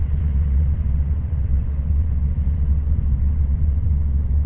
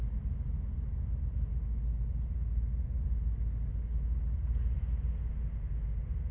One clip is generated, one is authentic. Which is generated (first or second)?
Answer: first